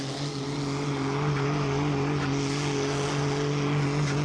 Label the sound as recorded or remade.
recorded